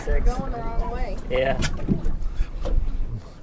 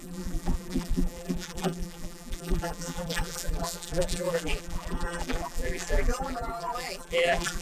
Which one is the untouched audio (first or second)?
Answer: first